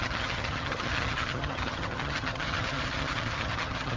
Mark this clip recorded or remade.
remade